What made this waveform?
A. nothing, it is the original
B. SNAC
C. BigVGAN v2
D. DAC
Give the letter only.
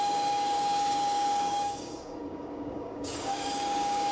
D